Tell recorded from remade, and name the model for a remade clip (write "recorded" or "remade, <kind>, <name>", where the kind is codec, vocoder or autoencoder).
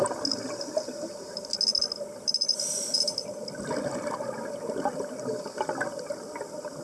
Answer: recorded